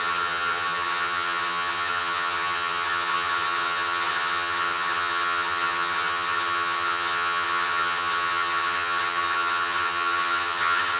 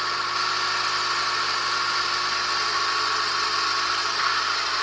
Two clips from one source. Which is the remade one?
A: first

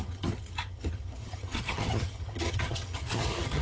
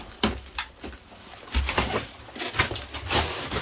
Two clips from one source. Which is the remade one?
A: first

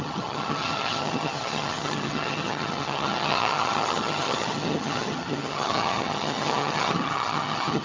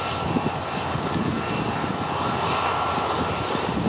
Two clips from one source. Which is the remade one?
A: first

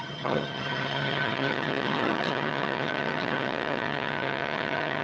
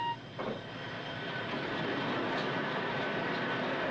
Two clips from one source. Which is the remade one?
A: first